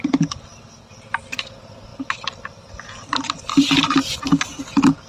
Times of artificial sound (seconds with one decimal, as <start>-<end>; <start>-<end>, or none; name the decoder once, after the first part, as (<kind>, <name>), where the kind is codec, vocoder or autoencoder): 0.0-5.1 (vocoder, BigVGAN v2)